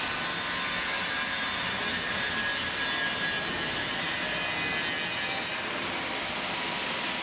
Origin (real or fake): real